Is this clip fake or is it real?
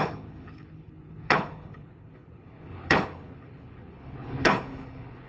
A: fake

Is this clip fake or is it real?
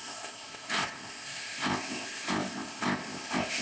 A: fake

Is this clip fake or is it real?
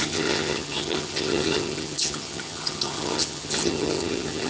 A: fake